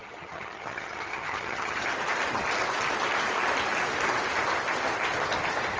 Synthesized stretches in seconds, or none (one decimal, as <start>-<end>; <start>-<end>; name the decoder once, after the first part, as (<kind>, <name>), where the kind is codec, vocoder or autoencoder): 0.0-1.8 (vocoder, HiFi-GAN)